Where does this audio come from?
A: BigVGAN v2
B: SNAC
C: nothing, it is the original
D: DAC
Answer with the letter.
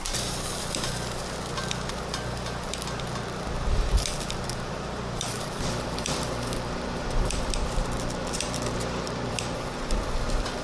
A